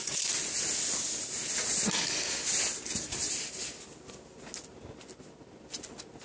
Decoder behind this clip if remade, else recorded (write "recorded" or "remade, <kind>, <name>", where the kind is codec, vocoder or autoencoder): recorded